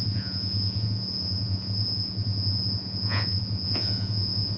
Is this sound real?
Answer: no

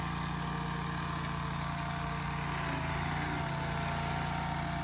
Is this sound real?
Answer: yes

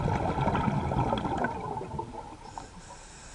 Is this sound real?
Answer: yes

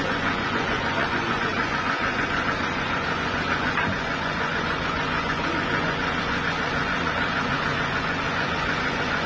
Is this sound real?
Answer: no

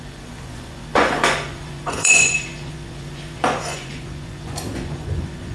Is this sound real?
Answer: no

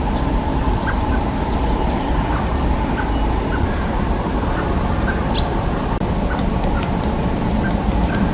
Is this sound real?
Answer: yes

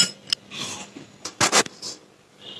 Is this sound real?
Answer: yes